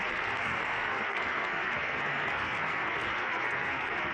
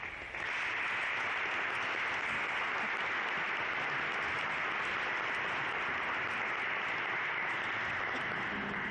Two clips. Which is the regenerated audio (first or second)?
first